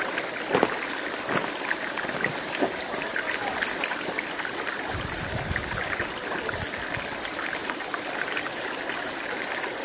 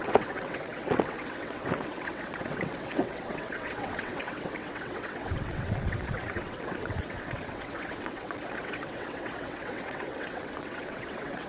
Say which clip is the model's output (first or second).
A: second